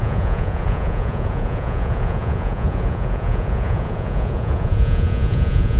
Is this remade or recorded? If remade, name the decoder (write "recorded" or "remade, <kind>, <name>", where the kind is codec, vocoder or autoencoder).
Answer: remade, vocoder, Vocos